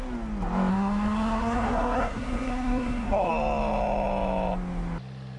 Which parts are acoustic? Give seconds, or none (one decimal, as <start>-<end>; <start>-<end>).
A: 0.0-0.7; 3.3-5.4